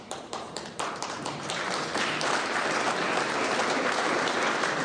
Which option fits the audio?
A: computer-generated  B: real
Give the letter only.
A